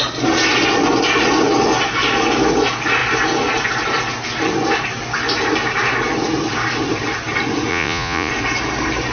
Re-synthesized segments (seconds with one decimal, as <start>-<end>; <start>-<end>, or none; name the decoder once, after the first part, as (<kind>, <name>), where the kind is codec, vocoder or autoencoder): 7.7-8.3 (vocoder, Vocos)